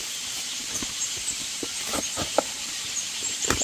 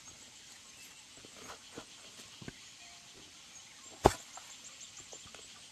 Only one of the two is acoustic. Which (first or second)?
second